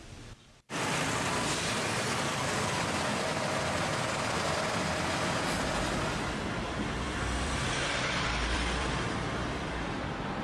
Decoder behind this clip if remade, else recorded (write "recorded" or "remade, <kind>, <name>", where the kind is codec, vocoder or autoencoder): remade, vocoder, BigVGAN v2